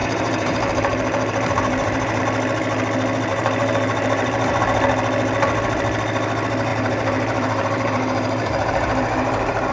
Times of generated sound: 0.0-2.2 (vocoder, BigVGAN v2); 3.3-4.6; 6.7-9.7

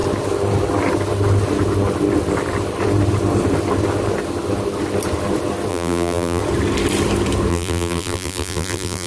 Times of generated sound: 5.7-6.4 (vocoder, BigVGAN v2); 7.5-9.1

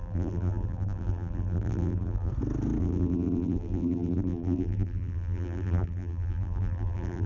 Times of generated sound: 0.0-2.3 (vocoder, BigVGAN v2); 2.8-7.3

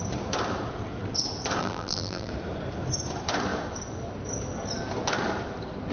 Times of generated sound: 1.6-2.3 (vocoder, BigVGAN v2)

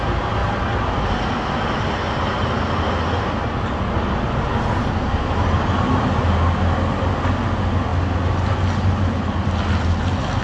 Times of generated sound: none

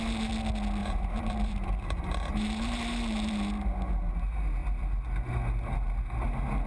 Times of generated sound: 0.8-4.1 (vocoder, BigVGAN v2)

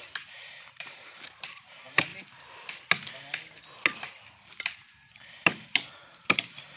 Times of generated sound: 0.0-2.1 (vocoder, BigVGAN v2); 5.9-6.8